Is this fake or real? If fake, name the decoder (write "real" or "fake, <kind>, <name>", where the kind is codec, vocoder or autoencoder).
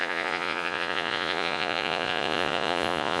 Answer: fake, vocoder, Vocos